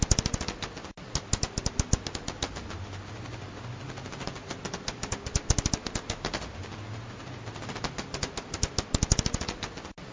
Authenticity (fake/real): real